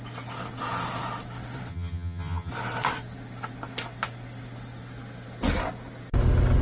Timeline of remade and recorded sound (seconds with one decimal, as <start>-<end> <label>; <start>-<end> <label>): 0.0-1.7 recorded; 1.7-2.5 remade; 2.5-6.6 recorded